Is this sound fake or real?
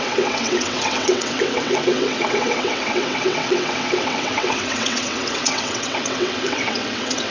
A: fake